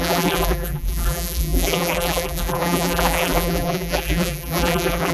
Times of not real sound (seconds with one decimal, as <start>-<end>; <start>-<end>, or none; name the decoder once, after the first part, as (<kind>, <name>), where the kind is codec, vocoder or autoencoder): 0.0-5.1 (vocoder, BigVGAN v2)